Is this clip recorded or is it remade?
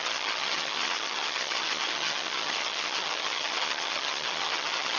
remade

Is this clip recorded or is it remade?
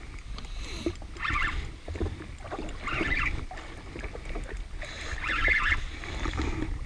recorded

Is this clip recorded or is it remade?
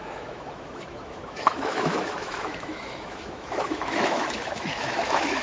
remade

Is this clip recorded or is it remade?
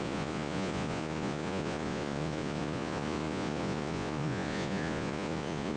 remade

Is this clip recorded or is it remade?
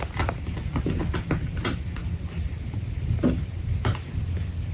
recorded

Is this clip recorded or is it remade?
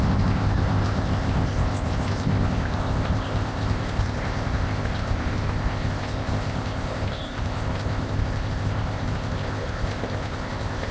remade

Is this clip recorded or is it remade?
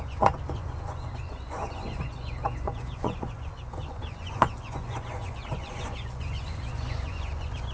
remade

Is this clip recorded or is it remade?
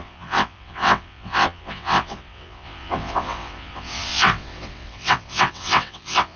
remade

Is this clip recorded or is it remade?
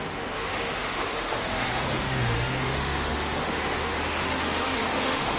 remade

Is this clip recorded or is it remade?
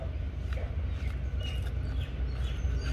recorded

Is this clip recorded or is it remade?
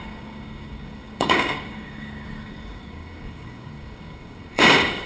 remade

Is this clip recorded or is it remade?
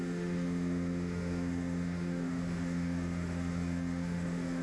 remade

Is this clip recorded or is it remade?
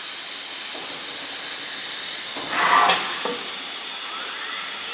remade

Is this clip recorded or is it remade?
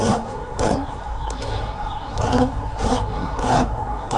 remade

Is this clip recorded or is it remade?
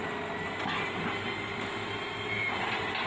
recorded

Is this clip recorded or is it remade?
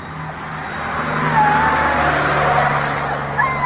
recorded